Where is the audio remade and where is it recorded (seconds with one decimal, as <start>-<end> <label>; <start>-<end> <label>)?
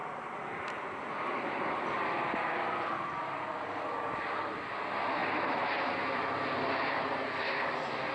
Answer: 0.0-2.0 remade; 2.0-8.1 recorded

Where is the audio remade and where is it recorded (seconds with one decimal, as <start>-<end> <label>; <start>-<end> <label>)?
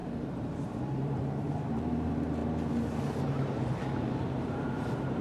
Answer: 0.0-2.4 remade; 2.4-3.0 recorded; 3.0-5.2 remade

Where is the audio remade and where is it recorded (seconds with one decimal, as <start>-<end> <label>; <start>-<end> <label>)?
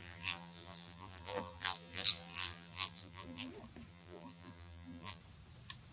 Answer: 0.0-3.5 remade; 3.5-3.9 recorded; 3.9-5.2 remade; 5.2-5.9 recorded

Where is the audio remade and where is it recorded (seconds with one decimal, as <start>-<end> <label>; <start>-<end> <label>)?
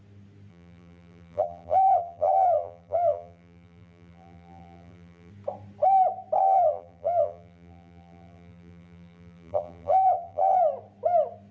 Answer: 0.0-0.5 recorded; 0.5-5.3 remade; 5.3-6.4 recorded; 6.4-10.5 remade; 10.5-11.5 recorded